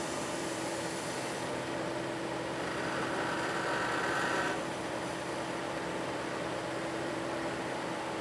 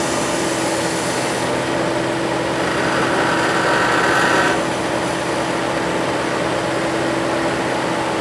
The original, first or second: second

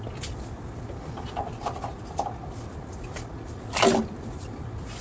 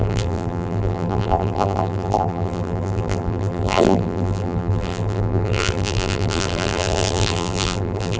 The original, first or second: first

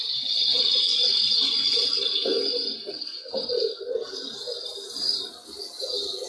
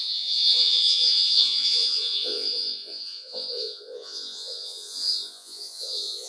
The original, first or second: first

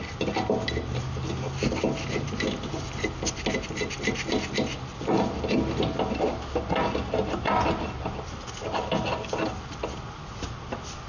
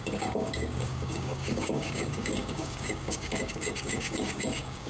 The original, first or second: first